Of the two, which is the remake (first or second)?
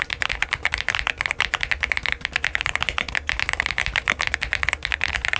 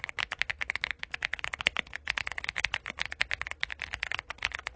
first